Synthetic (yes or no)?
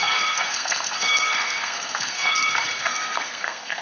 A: yes